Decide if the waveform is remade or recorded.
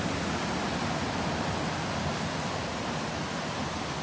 recorded